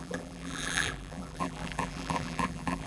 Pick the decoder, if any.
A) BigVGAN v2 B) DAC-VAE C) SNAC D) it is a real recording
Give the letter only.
A